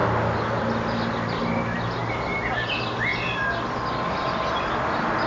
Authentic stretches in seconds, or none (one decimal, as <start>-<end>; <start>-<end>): 0.0-5.3